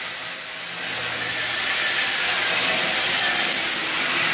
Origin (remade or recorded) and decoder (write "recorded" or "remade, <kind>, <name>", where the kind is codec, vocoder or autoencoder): recorded